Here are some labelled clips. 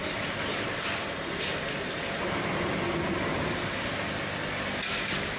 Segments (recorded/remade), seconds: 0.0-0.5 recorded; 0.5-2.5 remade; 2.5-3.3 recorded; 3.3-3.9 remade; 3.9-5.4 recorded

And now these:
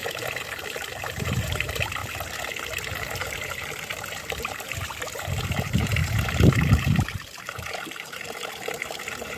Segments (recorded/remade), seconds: 0.0-2.0 remade; 2.0-3.0 recorded; 3.0-9.4 remade

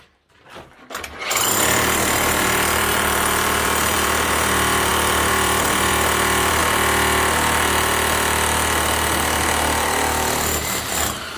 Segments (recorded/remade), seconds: 0.0-6.6 remade; 6.6-10.9 recorded; 10.9-11.4 remade